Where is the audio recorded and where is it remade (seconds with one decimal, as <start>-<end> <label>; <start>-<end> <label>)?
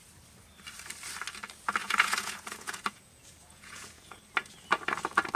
0.0-1.8 recorded; 1.8-4.2 remade; 4.2-5.4 recorded